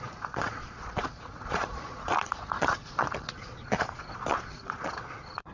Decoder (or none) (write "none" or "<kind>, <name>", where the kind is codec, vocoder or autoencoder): vocoder, Vocos